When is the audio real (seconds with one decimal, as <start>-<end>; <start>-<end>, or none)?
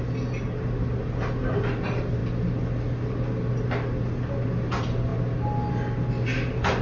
0.0-6.8